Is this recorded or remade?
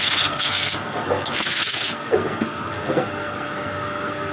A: remade